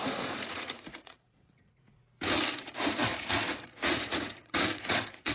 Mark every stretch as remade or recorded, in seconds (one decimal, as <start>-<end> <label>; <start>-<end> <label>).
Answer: 0.0-2.0 remade; 2.0-2.5 recorded; 2.5-5.3 remade